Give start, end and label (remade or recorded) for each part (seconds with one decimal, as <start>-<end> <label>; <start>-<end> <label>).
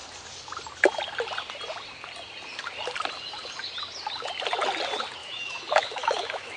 0.0-5.2 recorded; 5.2-6.6 remade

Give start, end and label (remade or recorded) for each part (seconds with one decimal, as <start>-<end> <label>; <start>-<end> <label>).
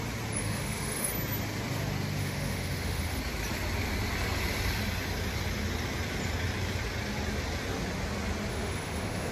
0.0-0.4 recorded; 0.4-1.1 remade; 1.1-2.2 recorded; 2.2-3.2 remade; 3.2-8.5 recorded; 8.5-9.3 remade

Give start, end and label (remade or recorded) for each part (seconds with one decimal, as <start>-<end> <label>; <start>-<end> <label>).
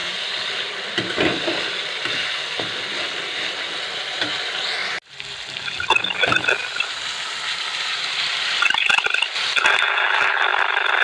0.0-11.0 recorded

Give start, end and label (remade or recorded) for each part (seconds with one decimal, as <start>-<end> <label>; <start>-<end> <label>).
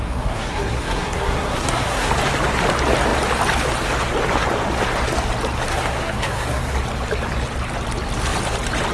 0.0-2.1 remade; 2.1-5.7 recorded; 5.7-6.6 remade; 6.6-8.9 recorded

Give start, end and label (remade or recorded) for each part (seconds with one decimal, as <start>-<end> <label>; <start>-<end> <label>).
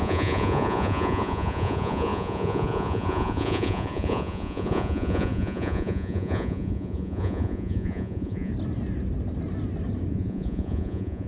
0.0-8.5 remade; 8.5-10.1 recorded; 10.1-11.3 remade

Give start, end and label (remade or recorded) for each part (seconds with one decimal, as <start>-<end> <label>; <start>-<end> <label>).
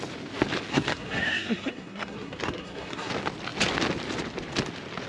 0.0-0.7 recorded; 0.7-3.1 remade; 3.1-5.1 recorded